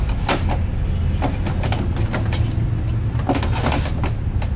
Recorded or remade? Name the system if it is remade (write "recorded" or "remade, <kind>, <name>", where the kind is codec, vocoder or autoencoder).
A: recorded